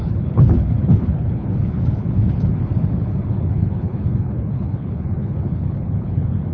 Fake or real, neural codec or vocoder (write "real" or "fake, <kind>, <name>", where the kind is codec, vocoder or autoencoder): fake, codec, HILCodec